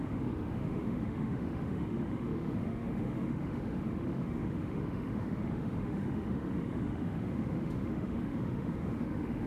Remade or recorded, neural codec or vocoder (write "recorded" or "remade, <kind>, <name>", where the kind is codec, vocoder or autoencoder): remade, autoencoder, DAC-VAE